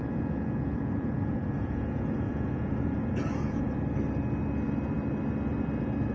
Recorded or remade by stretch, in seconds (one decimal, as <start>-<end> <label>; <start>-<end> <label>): 0.0-3.7 remade; 3.7-6.1 recorded